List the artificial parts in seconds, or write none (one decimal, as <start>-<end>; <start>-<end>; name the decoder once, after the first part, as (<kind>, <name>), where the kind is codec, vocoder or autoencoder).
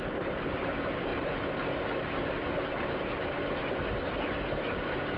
none